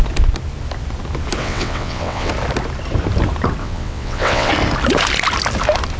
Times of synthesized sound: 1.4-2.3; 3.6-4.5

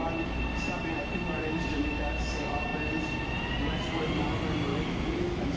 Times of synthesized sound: 4.7-5.6

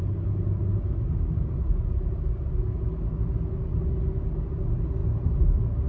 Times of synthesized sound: none

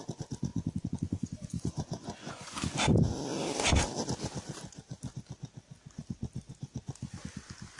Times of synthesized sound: 0.5-2.8

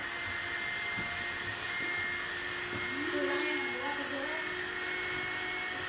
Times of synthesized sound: none

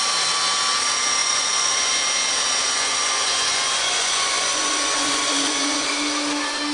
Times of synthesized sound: 1.2-1.9; 2.6-5.9